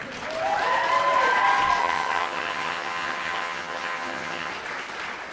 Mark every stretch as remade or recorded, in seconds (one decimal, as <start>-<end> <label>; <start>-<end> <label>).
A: 0.0-1.8 recorded; 1.8-4.5 remade; 4.5-5.3 recorded